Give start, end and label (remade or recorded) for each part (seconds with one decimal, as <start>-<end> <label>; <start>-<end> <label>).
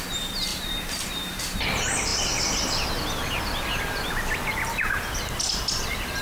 0.0-0.5 recorded; 0.5-1.4 remade; 1.4-6.2 recorded